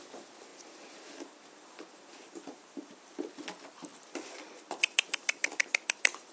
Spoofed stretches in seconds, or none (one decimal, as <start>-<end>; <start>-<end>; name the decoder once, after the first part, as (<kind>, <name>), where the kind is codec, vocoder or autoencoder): 0.5-2.9 (vocoder, BigVGAN v2); 3.9-6.3